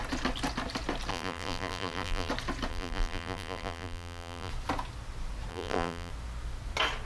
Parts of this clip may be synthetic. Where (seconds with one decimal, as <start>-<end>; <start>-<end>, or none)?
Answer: 1.1-2.3; 2.7-4.5; 5.5-6.1